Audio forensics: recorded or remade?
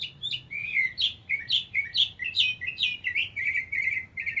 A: remade